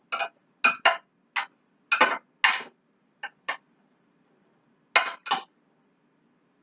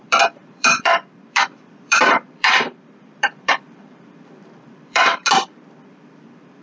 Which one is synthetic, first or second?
second